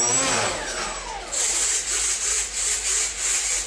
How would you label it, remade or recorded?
recorded